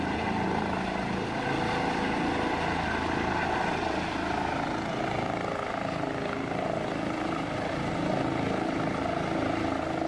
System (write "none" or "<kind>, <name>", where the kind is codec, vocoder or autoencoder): none